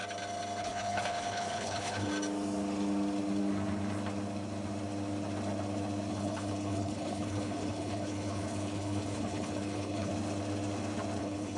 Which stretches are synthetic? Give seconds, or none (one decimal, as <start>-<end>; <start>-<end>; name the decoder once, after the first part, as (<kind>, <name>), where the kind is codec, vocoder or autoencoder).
0.6-2.1 (codec, HILCodec); 6.1-10.1; 11.2-11.6